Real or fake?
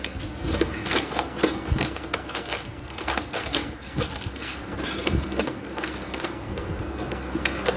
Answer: fake